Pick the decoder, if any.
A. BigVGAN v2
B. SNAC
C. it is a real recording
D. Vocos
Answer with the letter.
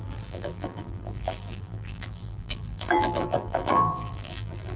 A